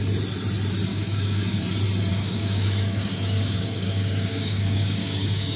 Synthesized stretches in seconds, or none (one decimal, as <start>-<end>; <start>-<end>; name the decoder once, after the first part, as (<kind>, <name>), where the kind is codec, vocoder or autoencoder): 0.9-1.6 (codec, DAC); 2.1-5.6